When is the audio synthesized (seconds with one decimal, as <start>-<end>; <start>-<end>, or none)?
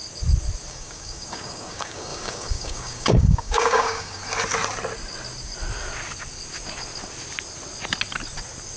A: 0.7-4.2